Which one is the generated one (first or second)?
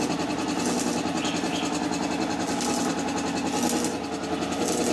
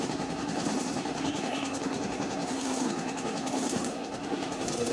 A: second